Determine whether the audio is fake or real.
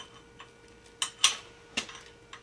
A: real